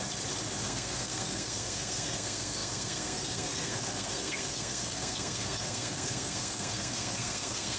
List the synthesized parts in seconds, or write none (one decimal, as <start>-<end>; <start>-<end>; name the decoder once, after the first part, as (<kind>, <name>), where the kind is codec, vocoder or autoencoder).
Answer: 0.6-7.8 (codec, SNAC)